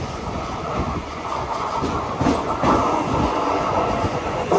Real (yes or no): no